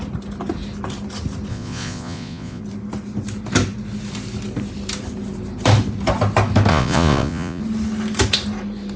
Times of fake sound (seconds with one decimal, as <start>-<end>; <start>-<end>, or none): 1.5-2.6; 6.7-7.6